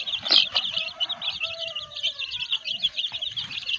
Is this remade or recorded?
remade